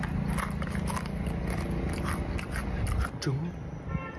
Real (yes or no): yes